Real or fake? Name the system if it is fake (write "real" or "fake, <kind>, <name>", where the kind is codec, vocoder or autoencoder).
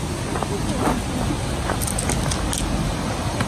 real